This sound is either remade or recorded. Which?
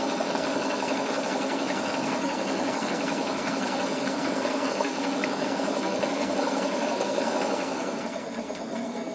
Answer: remade